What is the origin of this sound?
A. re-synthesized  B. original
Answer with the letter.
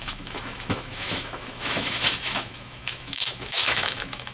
A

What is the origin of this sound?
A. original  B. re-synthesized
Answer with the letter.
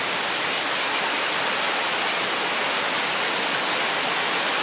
A